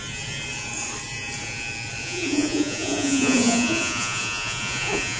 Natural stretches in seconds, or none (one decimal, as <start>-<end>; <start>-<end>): 0.0-2.0